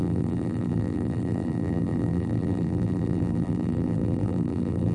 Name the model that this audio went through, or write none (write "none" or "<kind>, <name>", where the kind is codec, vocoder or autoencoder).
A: vocoder, BigVGAN v2